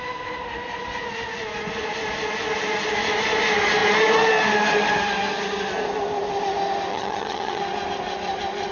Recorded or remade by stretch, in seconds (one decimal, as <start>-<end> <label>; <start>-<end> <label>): 0.0-6.9 recorded; 6.9-7.6 remade; 7.6-8.7 recorded